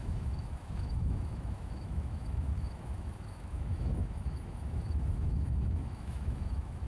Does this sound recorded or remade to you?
remade